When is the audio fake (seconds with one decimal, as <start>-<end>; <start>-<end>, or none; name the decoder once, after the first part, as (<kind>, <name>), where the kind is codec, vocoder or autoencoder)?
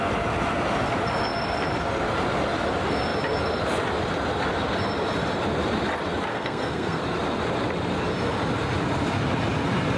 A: 6.3-7.0 (codec, SNAC)